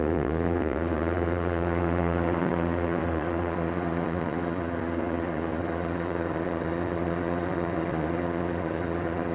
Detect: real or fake fake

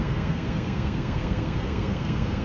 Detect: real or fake fake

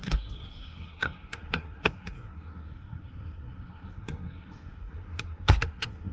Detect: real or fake fake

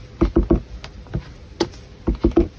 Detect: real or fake real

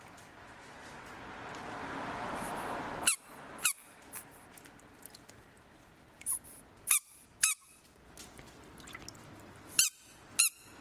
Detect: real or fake real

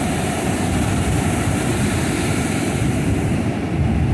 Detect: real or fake fake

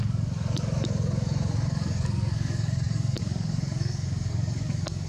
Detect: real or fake fake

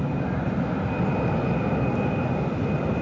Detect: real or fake real